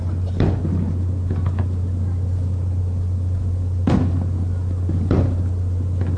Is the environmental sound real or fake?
real